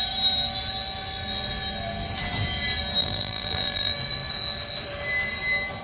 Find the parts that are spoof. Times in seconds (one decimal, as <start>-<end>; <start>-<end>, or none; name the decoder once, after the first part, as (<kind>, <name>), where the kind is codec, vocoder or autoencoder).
3.0-3.9 (vocoder, BigVGAN v2)